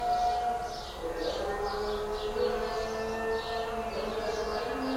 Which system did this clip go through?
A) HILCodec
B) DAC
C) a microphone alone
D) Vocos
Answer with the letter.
C